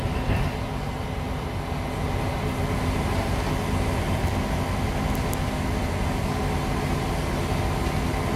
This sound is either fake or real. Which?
real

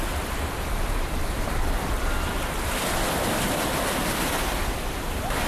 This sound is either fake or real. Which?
real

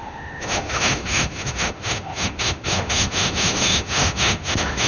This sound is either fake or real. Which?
fake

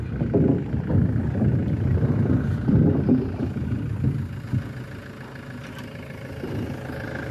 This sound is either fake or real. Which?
real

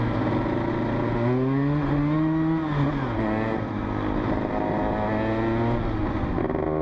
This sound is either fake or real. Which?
real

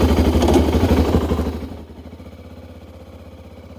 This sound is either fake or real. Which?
real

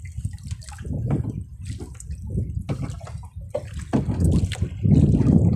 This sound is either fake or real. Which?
real